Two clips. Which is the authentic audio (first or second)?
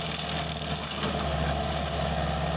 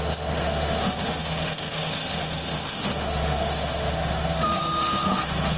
first